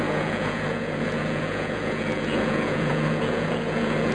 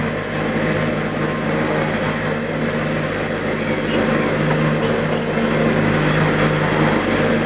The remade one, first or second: first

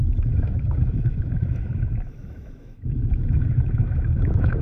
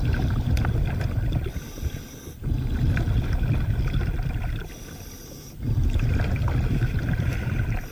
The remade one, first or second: first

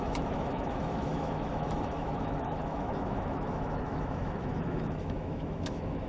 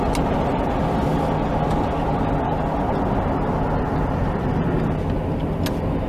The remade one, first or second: first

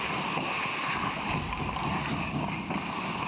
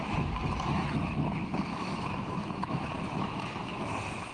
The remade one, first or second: second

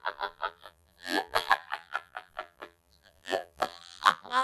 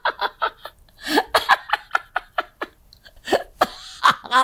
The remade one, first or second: first